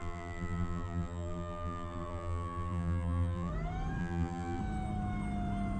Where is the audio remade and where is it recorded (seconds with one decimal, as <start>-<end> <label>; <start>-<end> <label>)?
0.0-3.5 remade; 3.5-4.0 recorded; 4.0-4.6 remade; 4.6-5.8 recorded